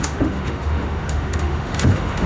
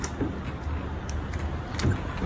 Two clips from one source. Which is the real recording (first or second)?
second